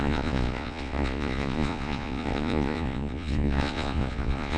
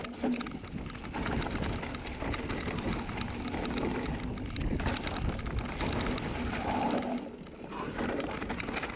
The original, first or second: second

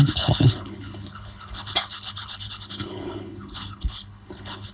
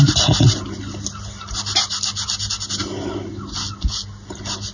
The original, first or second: second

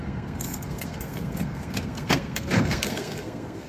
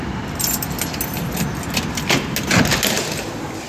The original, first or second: second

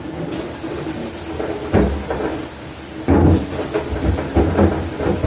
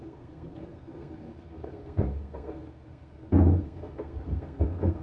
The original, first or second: first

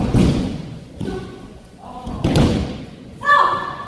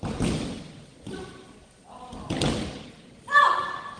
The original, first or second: second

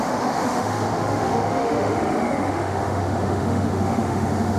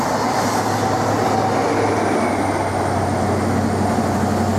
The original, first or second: second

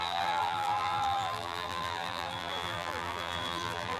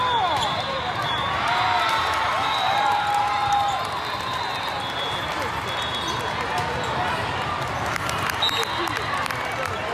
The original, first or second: second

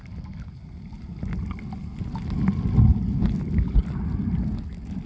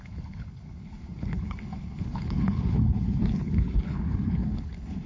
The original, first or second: first